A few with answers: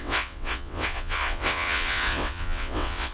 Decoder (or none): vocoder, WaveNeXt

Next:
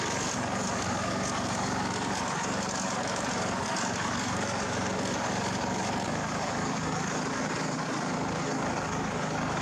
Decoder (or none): codec, DAC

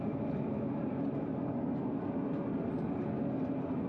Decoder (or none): none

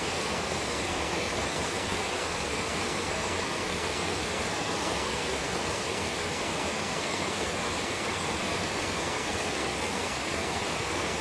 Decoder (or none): codec, SNAC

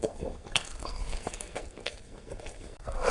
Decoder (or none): codec, SNAC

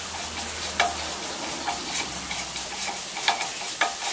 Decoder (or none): none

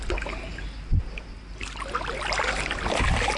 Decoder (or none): none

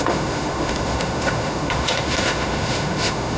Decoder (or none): autoencoder, DAC-VAE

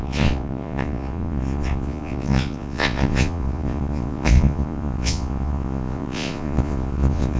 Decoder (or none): vocoder, Vocos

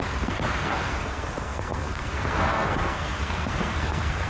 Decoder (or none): codec, SNAC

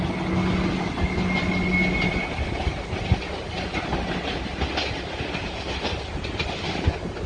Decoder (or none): none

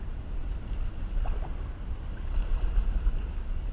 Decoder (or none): none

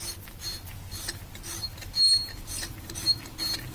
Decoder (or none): none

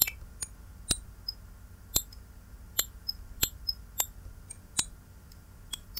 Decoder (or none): none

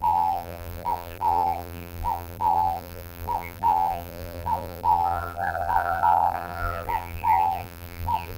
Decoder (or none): vocoder, BigVGAN v2